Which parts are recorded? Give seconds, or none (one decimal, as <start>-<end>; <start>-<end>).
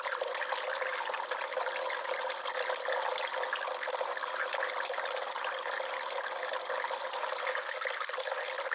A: 0.0-8.7